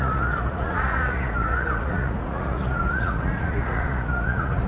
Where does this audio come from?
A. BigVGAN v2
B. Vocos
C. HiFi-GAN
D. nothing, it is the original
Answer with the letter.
B